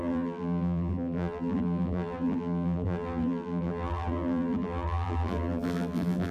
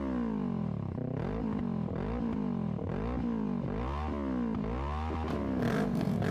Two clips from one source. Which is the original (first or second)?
second